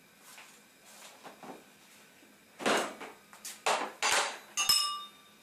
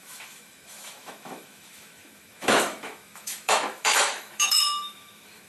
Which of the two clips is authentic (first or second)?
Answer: first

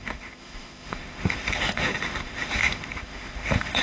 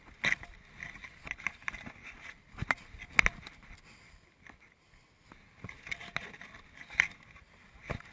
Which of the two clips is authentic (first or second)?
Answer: second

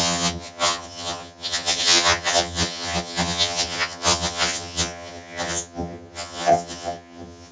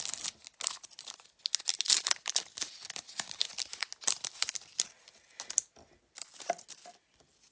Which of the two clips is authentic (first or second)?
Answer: second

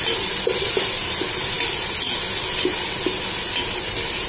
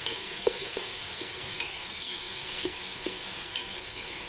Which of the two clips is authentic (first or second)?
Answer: first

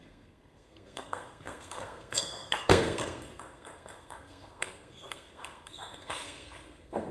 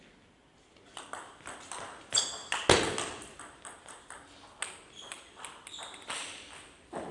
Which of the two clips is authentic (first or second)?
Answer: second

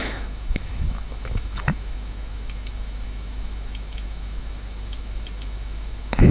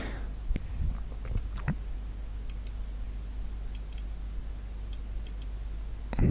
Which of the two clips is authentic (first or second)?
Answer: second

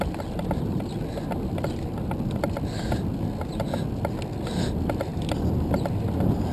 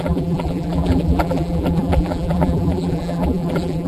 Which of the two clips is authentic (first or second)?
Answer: first